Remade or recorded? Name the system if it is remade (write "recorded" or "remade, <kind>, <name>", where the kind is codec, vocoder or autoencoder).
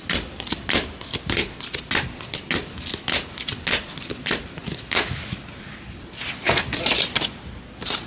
recorded